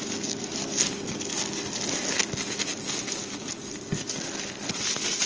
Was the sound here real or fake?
real